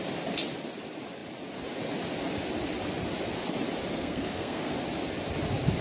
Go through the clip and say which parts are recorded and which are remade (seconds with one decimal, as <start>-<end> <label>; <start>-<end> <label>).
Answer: 0.0-3.9 recorded; 3.9-4.7 remade; 4.7-5.8 recorded